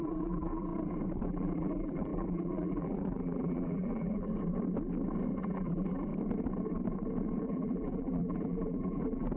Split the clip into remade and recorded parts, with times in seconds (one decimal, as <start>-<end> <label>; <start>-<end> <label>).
0.0-0.7 remade; 0.7-1.2 recorded; 1.2-4.3 remade; 4.3-5.4 recorded; 5.4-6.1 remade; 6.1-7.4 recorded; 7.4-9.4 remade